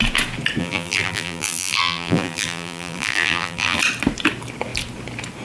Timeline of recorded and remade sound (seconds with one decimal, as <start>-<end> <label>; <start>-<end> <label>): 0.0-0.6 recorded; 0.6-3.8 remade; 3.8-5.4 recorded